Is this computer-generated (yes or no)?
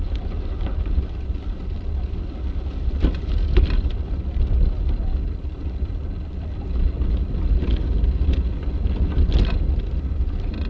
no